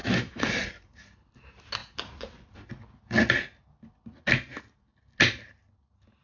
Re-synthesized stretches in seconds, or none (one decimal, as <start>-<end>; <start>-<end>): 0.0-0.6